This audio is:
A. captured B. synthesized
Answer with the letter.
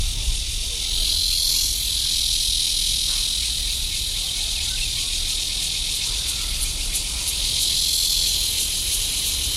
A